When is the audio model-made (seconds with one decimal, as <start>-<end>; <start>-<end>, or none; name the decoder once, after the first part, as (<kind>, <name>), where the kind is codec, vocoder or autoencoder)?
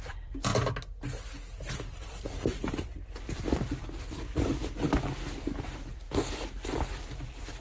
0.0-0.5 (vocoder, BigVGAN v2); 1.7-3.8; 5.6-7.6